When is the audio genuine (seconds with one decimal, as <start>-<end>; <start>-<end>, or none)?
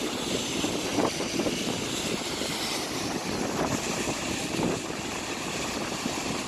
0.0-6.5